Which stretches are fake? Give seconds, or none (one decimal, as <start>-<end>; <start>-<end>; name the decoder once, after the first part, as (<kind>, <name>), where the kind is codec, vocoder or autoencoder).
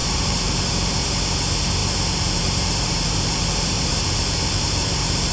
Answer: 0.0-0.6 (vocoder, BigVGAN v2); 1.8-5.3